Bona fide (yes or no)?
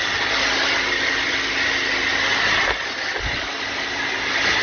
yes